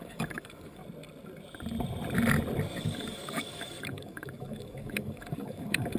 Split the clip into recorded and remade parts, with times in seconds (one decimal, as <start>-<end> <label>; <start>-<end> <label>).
0.0-0.8 remade; 0.8-2.8 recorded; 2.8-6.0 remade